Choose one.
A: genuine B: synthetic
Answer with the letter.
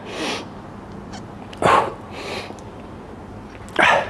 A